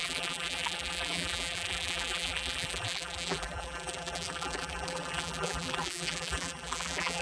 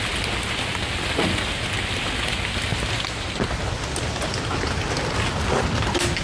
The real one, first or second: second